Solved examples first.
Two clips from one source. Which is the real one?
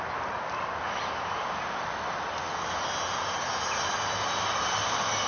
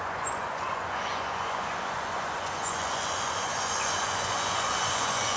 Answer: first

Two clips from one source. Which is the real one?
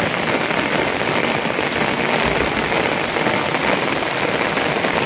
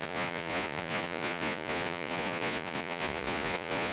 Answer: first